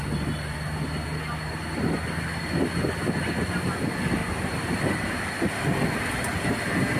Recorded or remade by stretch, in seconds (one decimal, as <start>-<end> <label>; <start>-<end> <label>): 0.0-4.2 recorded; 4.2-4.7 remade; 4.7-7.0 recorded